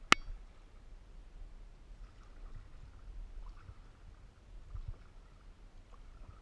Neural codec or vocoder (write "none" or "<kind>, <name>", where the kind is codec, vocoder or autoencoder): none